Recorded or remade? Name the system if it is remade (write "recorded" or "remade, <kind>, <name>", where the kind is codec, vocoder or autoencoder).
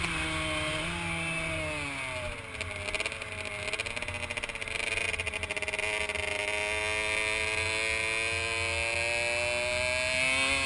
recorded